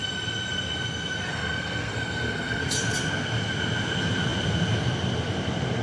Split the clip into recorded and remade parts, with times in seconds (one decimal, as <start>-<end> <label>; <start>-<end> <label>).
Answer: 0.0-1.3 recorded; 1.3-2.6 remade; 2.6-5.8 recorded